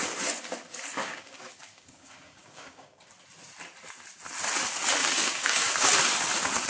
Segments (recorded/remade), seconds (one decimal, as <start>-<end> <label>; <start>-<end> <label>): 0.0-1.0 recorded; 1.0-3.1 remade; 3.1-5.0 recorded; 5.0-5.9 remade; 5.9-6.7 recorded

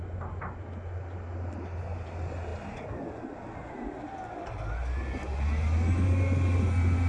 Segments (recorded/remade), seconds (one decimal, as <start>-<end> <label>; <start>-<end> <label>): 0.0-7.1 recorded